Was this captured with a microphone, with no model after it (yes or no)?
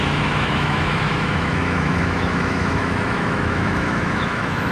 no